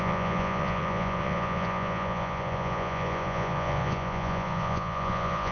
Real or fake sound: fake